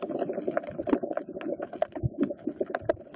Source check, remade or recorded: recorded